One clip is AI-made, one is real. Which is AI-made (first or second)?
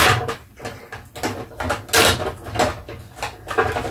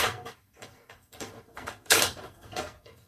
second